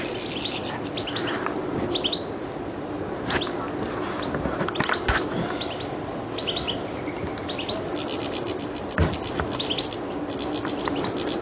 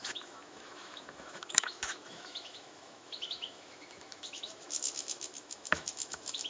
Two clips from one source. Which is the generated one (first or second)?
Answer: second